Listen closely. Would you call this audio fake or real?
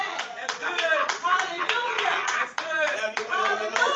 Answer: fake